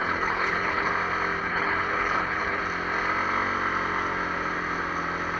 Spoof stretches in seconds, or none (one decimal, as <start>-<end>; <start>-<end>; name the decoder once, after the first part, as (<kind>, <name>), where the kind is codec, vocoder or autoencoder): 0.0-0.9 (codec, HILCodec); 1.4-2.6